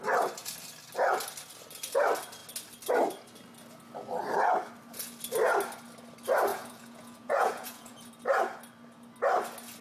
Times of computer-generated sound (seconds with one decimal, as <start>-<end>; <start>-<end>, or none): 6.5-8.1